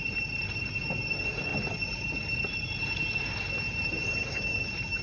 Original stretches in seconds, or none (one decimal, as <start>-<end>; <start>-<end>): 0.0-4.2